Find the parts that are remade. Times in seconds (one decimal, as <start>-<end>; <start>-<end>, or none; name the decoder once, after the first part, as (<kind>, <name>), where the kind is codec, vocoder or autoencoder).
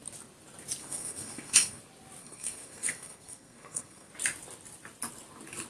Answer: 0.8-1.8 (codec, SNAC); 2.2-4.1